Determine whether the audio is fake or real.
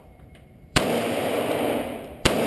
fake